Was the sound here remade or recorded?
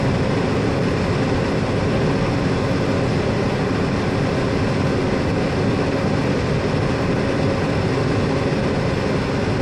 recorded